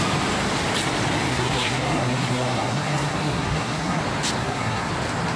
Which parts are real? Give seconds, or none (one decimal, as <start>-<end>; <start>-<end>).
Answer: 0.0-1.3; 4.0-4.4; 4.9-5.4